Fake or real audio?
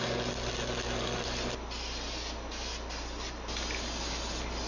real